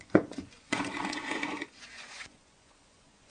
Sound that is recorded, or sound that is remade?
remade